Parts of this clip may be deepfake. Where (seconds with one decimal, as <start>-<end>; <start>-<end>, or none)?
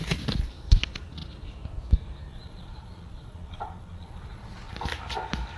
2.3-4.7